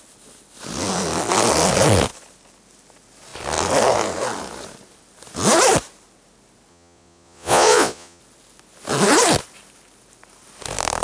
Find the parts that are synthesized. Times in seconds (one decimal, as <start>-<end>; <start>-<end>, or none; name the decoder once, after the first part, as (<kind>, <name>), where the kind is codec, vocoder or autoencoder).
6.7-8.2 (vocoder, Vocos)